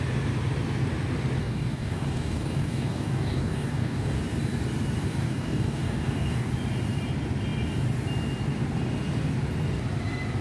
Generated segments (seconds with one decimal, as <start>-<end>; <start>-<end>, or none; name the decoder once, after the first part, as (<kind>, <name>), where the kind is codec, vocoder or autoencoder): 1.4-4.2 (codec, DAC); 5.2-6.5